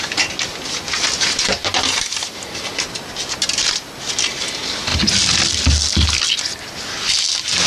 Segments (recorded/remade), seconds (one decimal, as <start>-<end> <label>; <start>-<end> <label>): 0.0-7.7 recorded